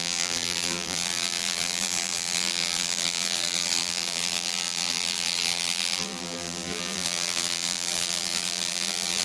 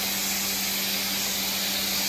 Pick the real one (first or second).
second